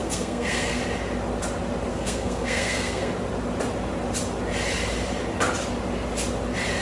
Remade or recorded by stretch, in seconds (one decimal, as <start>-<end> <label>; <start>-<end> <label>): 0.0-0.8 remade; 0.8-1.9 recorded; 1.9-3.1 remade; 3.1-6.8 recorded